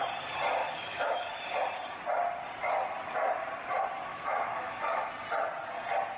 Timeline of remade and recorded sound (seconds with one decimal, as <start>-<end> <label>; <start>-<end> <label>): 0.0-0.6 recorded; 0.6-1.4 remade; 1.4-4.1 recorded; 4.1-5.1 remade; 5.1-6.2 recorded

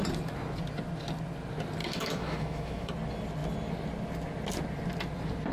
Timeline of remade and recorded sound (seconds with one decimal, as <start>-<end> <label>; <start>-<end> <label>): 0.0-1.8 recorded; 1.8-2.9 remade; 2.9-5.5 recorded

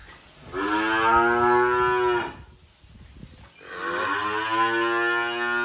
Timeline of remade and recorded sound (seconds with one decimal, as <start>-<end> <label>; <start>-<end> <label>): 0.0-5.6 recorded

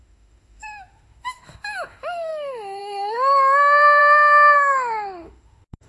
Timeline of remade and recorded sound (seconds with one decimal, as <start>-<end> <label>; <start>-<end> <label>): 0.0-5.9 remade

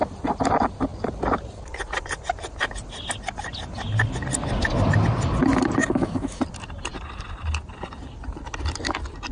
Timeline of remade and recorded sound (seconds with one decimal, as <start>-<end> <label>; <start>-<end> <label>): 0.0-5.8 recorded; 5.8-6.4 remade; 6.4-9.3 recorded